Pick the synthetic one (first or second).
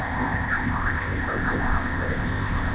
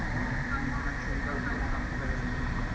first